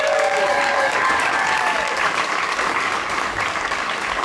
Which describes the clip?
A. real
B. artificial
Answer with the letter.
B